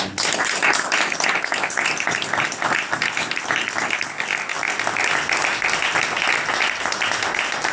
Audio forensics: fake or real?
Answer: real